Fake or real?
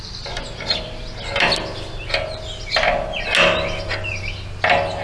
real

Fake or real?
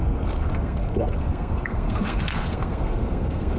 fake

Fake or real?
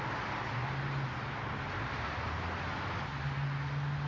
real